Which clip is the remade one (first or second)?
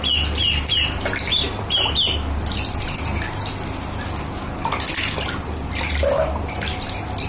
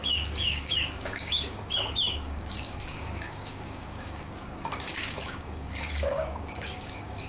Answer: second